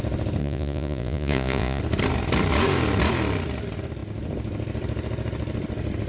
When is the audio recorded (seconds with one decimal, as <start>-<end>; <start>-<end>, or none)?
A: 0.0-0.4; 1.8-6.1